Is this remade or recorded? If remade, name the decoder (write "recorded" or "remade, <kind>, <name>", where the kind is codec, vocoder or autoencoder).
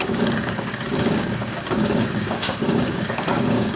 remade, codec, DAC